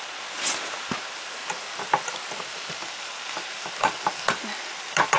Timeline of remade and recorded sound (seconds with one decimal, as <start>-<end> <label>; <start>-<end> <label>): 0.0-5.2 recorded